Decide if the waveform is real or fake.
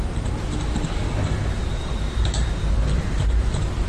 real